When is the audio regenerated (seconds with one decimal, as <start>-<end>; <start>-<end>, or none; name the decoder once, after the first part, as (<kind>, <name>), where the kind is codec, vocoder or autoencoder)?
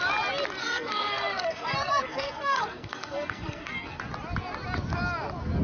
0.6-4.0 (codec, SNAC)